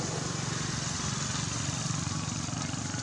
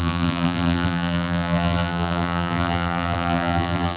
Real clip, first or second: first